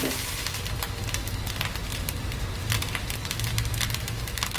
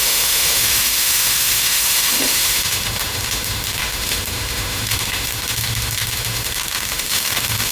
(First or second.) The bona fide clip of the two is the first